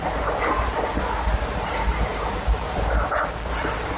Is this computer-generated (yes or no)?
no